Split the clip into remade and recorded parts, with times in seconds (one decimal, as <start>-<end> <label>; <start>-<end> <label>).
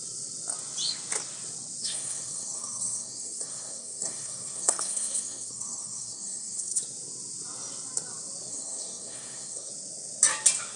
0.0-1.8 recorded; 1.8-6.8 remade; 6.8-8.5 recorded; 8.5-9.7 remade; 9.7-10.8 recorded